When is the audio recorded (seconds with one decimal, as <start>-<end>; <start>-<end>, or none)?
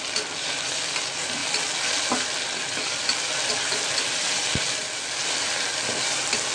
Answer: 0.0-6.5